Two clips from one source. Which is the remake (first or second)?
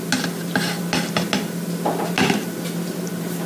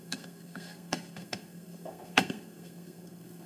second